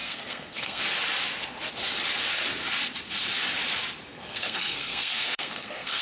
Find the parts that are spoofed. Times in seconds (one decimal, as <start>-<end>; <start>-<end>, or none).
0.0-0.8; 4.1-6.0